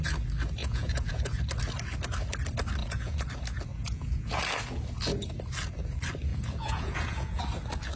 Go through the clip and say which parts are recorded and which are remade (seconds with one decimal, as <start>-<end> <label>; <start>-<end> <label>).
0.0-0.6 recorded; 0.6-1.4 remade; 1.4-2.8 recorded; 2.8-3.3 remade; 3.3-3.7 recorded; 3.7-4.4 remade; 4.4-6.3 recorded; 6.3-7.4 remade; 7.4-8.0 recorded

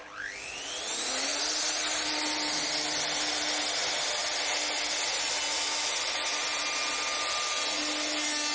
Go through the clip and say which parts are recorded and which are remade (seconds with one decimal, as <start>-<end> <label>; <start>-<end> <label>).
0.0-8.5 recorded

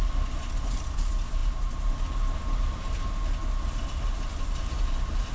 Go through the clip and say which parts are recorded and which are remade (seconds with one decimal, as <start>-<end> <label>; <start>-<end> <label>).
0.0-5.3 recorded

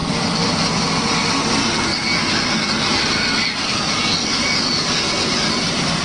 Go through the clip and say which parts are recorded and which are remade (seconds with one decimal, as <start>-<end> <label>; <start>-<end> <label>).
0.0-6.0 recorded

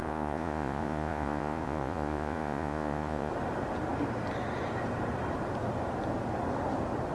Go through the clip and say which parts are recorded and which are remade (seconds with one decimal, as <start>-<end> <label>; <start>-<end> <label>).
0.0-3.3 remade; 3.3-7.1 recorded

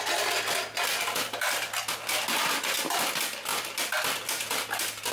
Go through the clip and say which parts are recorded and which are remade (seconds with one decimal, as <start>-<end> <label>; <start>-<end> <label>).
0.0-5.1 recorded

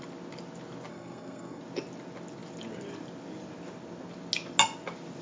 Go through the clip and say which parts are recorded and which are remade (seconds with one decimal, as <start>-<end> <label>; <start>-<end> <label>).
0.0-0.9 recorded; 0.9-1.6 remade; 1.6-5.2 recorded